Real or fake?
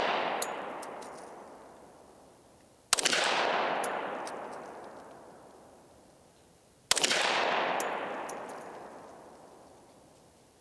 real